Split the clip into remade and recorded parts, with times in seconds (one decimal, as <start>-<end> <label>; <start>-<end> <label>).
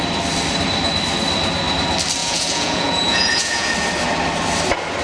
0.0-2.2 recorded; 2.2-3.7 remade; 3.7-5.0 recorded